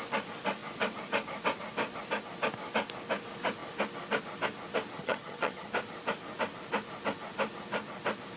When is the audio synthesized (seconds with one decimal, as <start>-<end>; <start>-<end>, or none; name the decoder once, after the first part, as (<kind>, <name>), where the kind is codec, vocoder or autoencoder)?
5.0-5.7 (vocoder, HiFi-GAN)